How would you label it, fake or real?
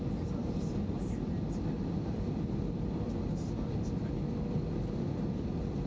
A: real